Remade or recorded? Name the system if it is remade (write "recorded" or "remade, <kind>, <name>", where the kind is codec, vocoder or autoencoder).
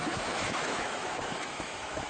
remade, autoencoder, DAC-VAE